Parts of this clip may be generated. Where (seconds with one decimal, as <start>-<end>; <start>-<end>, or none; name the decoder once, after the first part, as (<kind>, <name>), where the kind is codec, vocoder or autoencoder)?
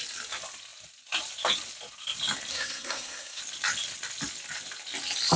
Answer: 2.5-3.4 (codec, SNAC)